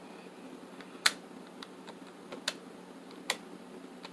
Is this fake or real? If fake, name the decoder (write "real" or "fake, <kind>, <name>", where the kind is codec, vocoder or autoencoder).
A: real